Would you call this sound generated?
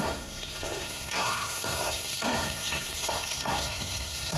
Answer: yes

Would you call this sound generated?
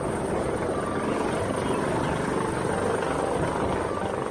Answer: no